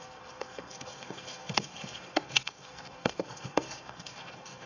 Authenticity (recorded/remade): remade